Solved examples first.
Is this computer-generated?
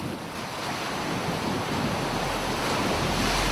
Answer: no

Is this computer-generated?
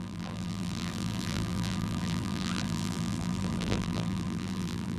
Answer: yes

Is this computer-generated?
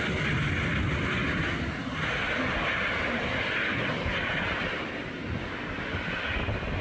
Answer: no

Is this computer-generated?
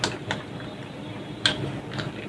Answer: no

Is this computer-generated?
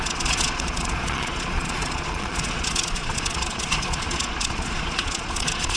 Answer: yes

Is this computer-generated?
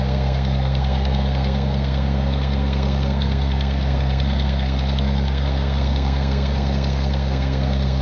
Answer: yes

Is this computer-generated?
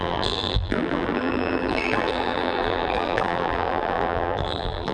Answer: yes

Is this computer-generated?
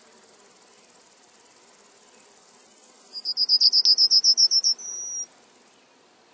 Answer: no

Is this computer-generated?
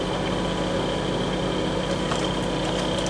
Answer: no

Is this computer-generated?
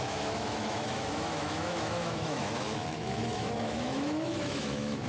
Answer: yes